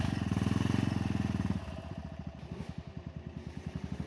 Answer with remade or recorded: recorded